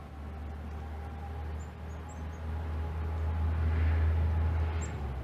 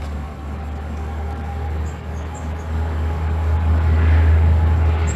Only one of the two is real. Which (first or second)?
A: first